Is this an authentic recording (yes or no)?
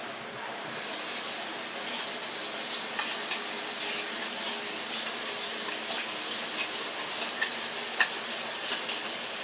yes